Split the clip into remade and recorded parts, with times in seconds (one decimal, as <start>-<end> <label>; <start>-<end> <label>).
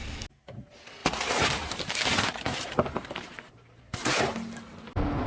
0.0-1.0 recorded; 1.0-4.2 remade; 4.2-5.3 recorded